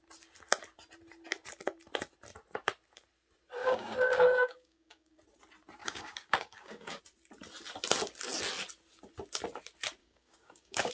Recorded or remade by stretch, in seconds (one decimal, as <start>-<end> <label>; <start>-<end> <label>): 0.0-3.6 recorded; 3.6-5.2 remade; 5.2-5.8 recorded; 5.8-7.0 remade; 7.0-10.0 recorded; 10.0-10.9 remade

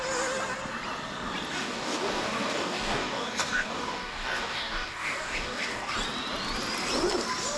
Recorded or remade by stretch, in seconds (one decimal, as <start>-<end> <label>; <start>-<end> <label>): 0.0-1.6 recorded; 1.6-5.9 remade; 5.9-7.6 recorded

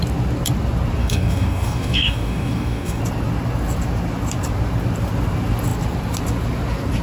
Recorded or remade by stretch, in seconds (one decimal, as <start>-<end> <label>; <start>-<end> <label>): 0.0-1.0 recorded; 1.0-3.0 remade; 3.0-7.0 recorded

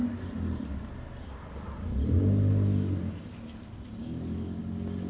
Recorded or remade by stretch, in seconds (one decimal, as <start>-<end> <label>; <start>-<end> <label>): 0.0-4.0 recorded; 4.0-4.6 remade; 4.6-5.1 recorded

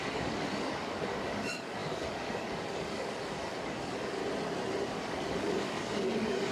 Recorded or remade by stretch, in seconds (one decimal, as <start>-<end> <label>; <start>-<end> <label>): 0.0-4.2 remade; 4.2-4.9 recorded; 4.9-6.5 remade

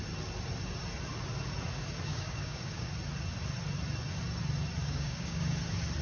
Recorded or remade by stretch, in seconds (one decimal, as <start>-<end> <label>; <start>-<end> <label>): 0.0-2.1 recorded; 2.1-2.9 remade; 2.9-4.8 recorded; 4.8-5.5 remade; 5.5-6.0 recorded

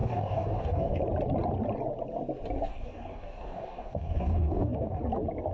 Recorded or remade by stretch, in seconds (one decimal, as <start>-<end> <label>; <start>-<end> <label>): 0.0-1.0 remade; 1.0-2.7 recorded; 2.7-5.0 remade; 5.0-5.5 recorded

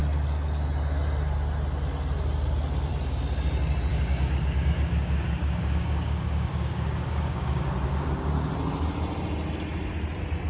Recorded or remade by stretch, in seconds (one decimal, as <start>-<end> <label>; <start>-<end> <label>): 0.0-3.9 recorded; 3.9-8.5 remade; 8.5-10.5 recorded